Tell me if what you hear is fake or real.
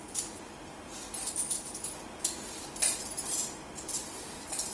real